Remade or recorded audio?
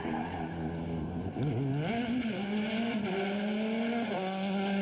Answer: recorded